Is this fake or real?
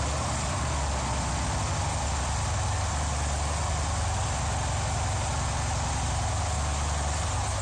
real